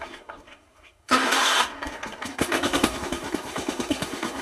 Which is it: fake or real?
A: fake